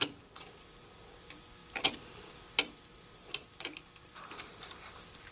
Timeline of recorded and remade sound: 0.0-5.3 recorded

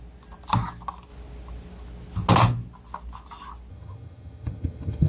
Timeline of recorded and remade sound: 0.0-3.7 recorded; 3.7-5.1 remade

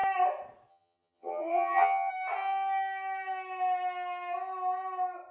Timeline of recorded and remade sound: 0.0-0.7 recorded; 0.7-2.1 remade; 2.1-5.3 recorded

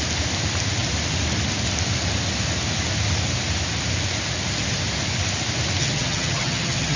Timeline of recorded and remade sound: 0.0-5.8 recorded; 5.8-7.0 remade

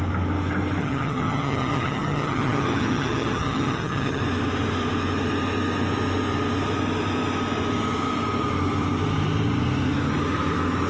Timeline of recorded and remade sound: 0.0-0.8 recorded; 0.8-4.2 remade; 4.2-10.9 recorded